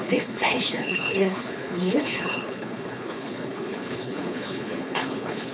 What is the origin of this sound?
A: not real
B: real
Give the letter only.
A